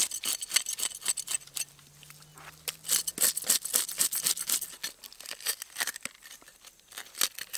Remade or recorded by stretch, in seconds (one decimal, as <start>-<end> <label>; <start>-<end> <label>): 0.0-7.6 recorded